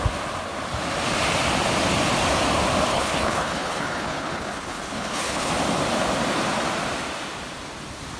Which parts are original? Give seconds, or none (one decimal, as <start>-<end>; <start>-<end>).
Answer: 0.0-2.9; 5.5-8.2